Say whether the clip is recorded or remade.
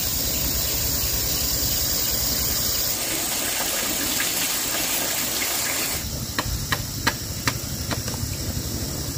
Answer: recorded